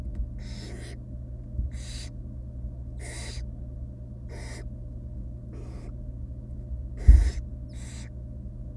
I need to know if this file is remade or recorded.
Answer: recorded